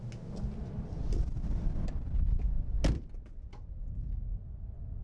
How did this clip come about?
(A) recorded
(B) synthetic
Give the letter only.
A